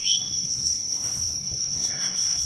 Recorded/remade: remade